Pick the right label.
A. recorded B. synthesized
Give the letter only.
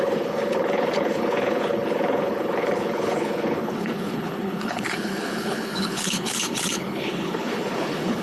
B